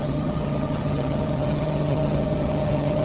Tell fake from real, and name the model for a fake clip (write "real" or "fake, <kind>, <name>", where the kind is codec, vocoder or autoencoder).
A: fake, vocoder, HiFi-GAN